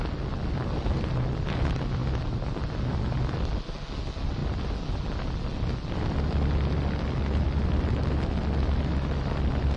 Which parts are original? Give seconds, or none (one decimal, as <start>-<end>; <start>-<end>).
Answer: 0.0-9.8